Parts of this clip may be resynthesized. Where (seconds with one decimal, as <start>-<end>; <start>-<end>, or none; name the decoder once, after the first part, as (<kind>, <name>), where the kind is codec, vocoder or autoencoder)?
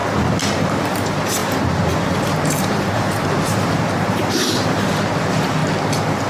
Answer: 0.7-5.6 (vocoder, BigVGAN v2)